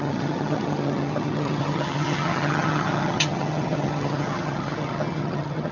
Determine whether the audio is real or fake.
fake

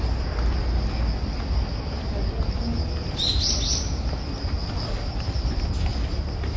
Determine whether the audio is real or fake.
real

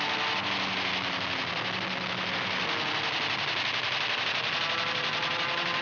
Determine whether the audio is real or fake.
real